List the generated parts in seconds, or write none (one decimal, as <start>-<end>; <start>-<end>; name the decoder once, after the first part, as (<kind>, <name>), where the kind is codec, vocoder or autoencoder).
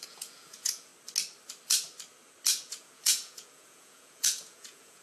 0.0-0.9 (vocoder, Vocos); 2.6-5.0